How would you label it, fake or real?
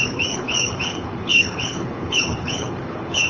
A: fake